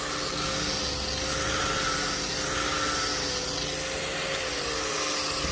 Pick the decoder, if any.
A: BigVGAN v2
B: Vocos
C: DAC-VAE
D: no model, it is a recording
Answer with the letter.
D